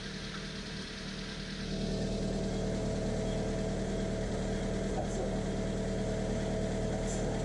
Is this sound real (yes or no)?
yes